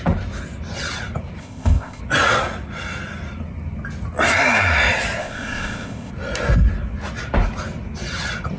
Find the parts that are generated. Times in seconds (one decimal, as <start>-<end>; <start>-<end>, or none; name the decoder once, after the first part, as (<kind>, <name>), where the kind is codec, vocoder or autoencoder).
1.4-2.0 (codec, ZipCodec); 5.2-6.1